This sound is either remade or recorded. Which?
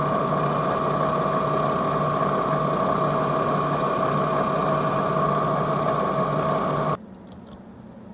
recorded